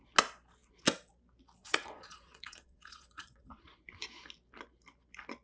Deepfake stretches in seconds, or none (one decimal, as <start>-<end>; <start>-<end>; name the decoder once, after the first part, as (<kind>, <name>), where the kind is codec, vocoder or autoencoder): 1.6-3.8 (vocoder, Vocos)